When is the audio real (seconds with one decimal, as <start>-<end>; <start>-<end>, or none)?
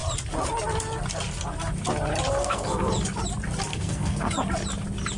0.0-2.4; 2.9-3.7; 4.3-5.2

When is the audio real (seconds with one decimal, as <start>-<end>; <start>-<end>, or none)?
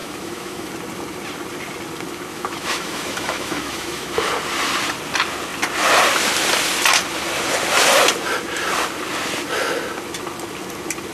0.7-2.3; 4.3-11.1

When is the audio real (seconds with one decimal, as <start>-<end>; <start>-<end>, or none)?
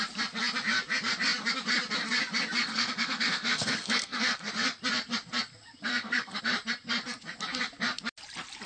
0.0-2.6; 4.5-5.9; 6.4-8.7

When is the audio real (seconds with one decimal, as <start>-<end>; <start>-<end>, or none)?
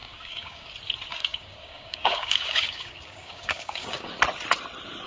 0.7-1.1; 4.1-5.1